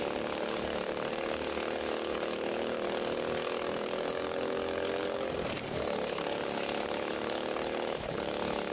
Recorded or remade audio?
remade